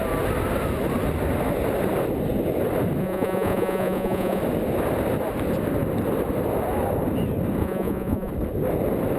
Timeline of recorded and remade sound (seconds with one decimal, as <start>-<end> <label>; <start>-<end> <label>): 0.0-3.0 recorded; 3.0-4.4 remade; 4.4-7.6 recorded; 7.6-8.3 remade; 8.3-9.2 recorded